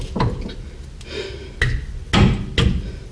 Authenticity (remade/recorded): recorded